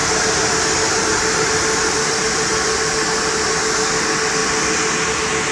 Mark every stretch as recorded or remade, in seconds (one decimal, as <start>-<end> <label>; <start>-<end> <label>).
0.0-3.3 remade; 3.3-5.5 recorded